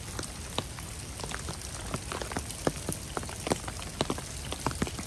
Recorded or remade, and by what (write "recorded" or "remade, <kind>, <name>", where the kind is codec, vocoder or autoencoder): recorded